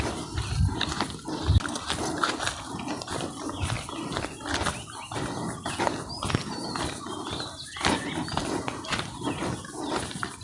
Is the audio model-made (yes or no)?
no